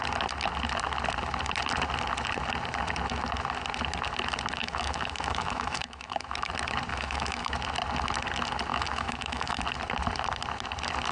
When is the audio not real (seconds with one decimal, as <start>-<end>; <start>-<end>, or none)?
4.6-6.5; 6.9-7.5; 8.7-9.6